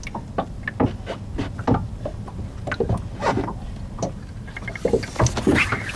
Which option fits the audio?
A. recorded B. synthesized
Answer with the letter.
A